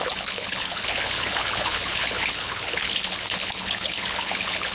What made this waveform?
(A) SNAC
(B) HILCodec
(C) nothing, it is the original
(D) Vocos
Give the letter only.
B